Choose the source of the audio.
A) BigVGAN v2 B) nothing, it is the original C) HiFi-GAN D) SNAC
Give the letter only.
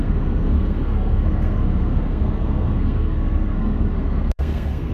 D